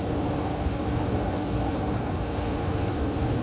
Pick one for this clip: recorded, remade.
remade